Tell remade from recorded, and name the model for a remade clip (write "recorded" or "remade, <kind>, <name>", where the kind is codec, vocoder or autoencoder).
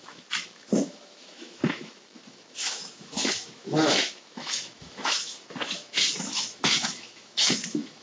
remade, autoencoder, DAC-VAE